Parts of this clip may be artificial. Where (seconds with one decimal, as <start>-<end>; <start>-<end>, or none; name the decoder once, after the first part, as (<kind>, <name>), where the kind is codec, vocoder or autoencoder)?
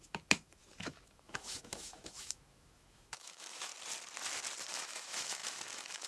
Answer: 0.0-3.7 (autoencoder, DAC-VAE); 4.7-6.1